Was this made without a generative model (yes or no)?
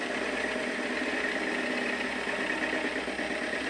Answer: yes